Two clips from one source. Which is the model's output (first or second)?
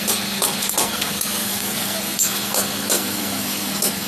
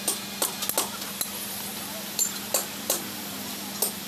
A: first